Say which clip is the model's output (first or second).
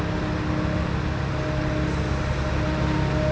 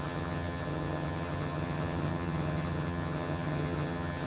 second